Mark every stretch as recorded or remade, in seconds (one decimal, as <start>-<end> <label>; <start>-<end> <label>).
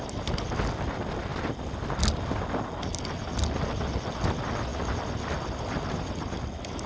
0.0-6.9 recorded